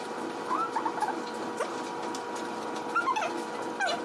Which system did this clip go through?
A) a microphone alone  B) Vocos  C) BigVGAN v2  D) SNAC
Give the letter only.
A